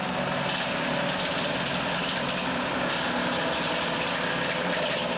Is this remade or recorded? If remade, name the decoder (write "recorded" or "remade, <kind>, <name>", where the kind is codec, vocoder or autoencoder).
recorded